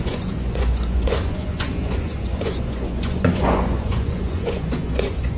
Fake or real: fake